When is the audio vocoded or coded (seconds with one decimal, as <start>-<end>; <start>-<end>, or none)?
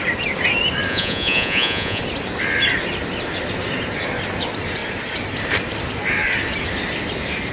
0.9-2.0